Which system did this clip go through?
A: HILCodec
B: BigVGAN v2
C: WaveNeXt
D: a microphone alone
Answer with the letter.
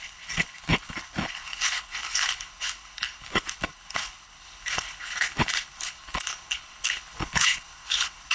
A